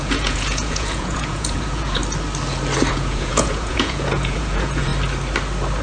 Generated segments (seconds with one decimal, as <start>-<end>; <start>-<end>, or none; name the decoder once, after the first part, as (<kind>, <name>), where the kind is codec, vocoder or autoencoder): 0.0-2.0 (vocoder, Vocos); 2.9-4.9

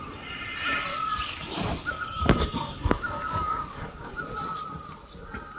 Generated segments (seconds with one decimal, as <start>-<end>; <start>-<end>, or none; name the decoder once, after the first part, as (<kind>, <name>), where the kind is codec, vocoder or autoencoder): 0.9-4.1 (codec, DAC)

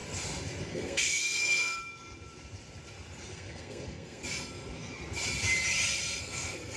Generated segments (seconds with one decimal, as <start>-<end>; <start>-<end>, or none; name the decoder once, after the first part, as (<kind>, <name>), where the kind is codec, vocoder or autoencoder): 0.7-1.8 (codec, SNAC); 3.3-4.2; 6.2-6.8

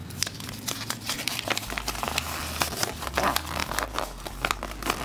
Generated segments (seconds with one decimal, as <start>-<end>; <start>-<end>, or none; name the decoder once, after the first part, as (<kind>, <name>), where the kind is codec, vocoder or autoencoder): 0.0-1.3 (vocoder, BigVGAN v2)

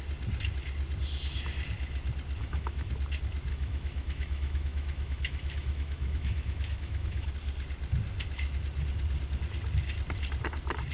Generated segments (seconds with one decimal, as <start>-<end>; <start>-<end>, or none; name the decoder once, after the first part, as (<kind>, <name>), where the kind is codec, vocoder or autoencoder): 2.4-2.9 (autoencoder, DAC-VAE); 3.5-7.3